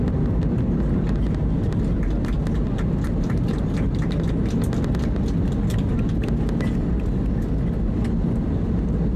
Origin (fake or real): real